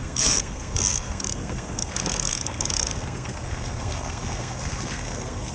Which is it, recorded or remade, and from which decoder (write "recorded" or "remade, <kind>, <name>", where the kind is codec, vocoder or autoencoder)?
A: remade, codec, SNAC